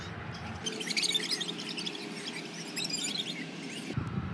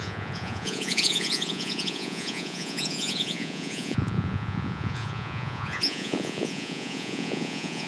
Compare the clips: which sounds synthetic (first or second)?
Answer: second